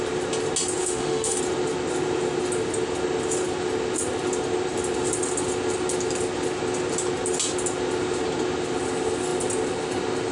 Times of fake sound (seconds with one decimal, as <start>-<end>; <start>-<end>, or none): 0.8-1.4